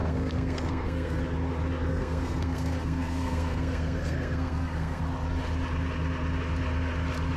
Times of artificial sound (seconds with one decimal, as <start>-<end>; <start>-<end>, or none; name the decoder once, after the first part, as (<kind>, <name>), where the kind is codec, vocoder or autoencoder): 0.0-1.2 (codec, SNAC); 1.9-5.0